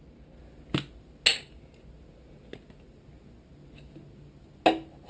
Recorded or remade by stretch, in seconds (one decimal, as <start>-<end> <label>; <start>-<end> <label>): 0.0-5.1 recorded